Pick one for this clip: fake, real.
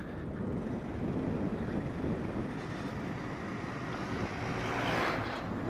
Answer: real